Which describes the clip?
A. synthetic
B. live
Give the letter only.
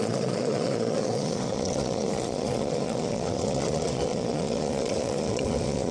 A